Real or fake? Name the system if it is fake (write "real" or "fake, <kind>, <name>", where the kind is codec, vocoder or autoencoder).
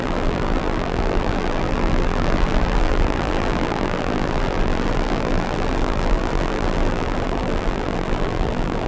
fake, vocoder, BigVGAN v2